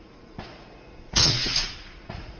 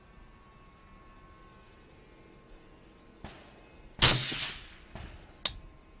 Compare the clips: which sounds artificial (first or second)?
first